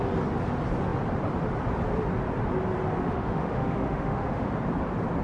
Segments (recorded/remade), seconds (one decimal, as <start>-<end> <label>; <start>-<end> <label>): 0.0-3.0 recorded; 3.0-4.5 remade; 4.5-5.2 recorded